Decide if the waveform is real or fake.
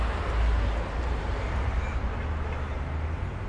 real